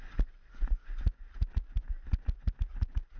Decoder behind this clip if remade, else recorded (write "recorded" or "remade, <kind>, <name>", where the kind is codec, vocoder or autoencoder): recorded